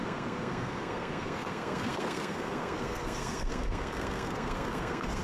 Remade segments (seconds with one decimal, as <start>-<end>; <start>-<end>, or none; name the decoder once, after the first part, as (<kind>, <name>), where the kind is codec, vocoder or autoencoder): 0.0-5.2 (codec, SNAC)